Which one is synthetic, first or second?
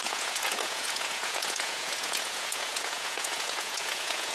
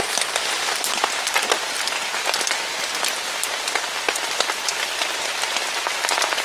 first